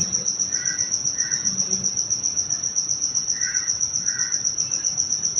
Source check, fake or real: real